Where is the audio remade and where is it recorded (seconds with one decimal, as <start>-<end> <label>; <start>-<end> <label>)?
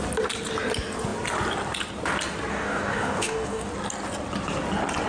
0.0-2.5 recorded; 2.5-3.7 remade; 3.7-5.1 recorded